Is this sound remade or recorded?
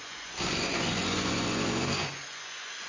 remade